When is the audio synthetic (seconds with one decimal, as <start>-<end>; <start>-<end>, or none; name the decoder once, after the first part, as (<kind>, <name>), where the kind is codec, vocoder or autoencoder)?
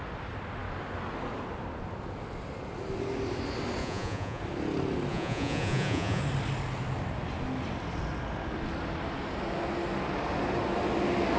3.8-4.4 (vocoder, Vocos); 5.1-6.2